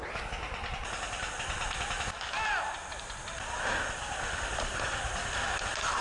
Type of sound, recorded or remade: recorded